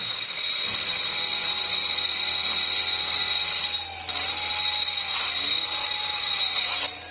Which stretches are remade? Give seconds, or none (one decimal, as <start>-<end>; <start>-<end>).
5.8-6.4